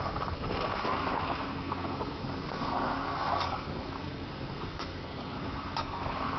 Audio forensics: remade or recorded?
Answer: remade